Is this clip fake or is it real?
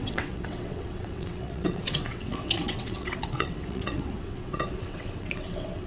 fake